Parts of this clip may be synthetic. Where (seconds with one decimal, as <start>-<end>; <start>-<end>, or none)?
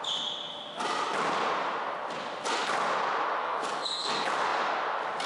3.4-4.1